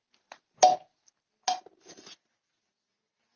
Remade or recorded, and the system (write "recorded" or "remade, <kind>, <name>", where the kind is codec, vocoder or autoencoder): recorded